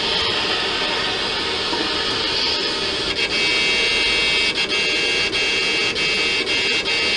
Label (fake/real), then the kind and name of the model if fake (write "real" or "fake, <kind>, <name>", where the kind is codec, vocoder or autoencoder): real